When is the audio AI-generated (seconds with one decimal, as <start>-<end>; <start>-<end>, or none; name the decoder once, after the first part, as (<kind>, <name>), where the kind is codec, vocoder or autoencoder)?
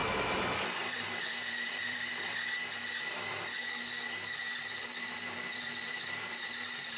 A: 0.9-2.8 (vocoder, BigVGAN v2); 4.6-7.0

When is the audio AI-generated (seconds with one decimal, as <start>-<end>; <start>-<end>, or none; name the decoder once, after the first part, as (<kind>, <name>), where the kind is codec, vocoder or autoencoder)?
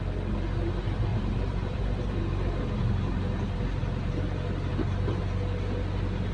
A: 1.1-2.2 (vocoder, BigVGAN v2)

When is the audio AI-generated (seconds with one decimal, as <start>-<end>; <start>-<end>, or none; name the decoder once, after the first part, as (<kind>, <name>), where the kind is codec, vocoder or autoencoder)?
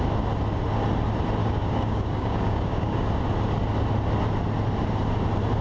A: 1.4-3.1 (codec, DAC)